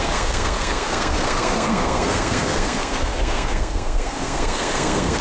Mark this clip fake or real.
fake